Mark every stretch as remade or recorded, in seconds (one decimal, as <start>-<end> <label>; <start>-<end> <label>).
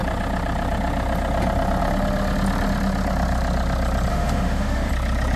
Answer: 0.0-4.1 recorded; 4.1-4.9 remade; 4.9-5.4 recorded